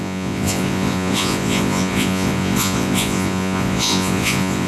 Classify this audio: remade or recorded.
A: remade